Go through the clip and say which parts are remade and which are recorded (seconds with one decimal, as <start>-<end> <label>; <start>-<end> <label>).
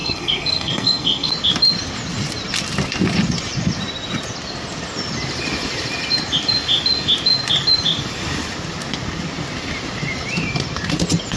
0.0-1.3 remade; 1.3-11.4 recorded